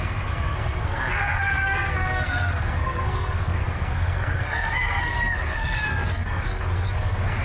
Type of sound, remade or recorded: remade